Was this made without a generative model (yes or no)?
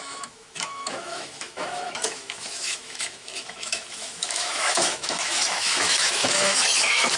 no